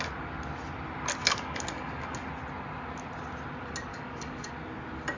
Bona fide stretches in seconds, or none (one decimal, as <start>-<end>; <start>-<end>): 0.0-1.2; 2.3-3.9; 4.5-5.2